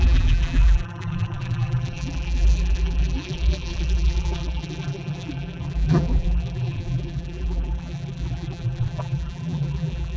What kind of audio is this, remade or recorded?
remade